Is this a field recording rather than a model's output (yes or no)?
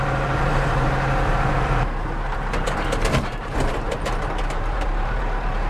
no